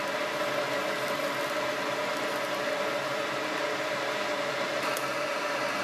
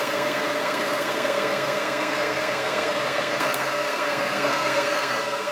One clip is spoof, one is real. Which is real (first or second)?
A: first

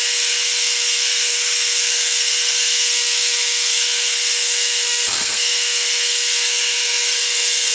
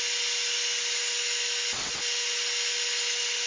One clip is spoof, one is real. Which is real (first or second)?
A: second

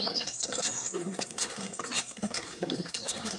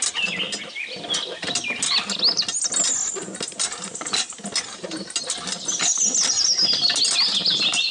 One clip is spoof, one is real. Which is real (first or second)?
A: second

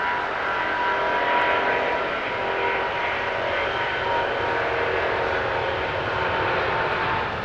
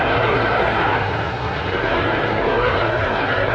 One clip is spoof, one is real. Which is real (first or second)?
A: first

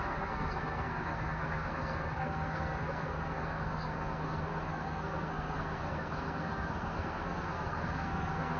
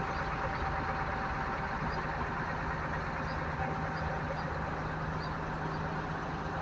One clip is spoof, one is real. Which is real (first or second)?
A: second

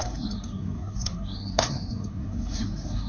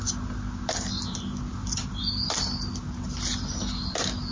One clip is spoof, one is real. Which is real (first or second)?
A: second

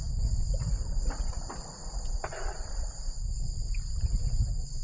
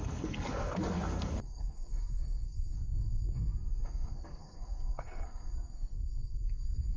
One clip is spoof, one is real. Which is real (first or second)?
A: first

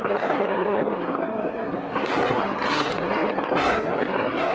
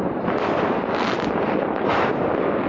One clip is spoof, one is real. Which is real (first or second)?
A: second